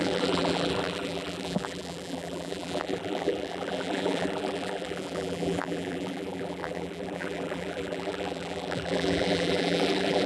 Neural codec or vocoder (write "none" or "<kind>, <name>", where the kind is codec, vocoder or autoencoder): vocoder, BigVGAN v2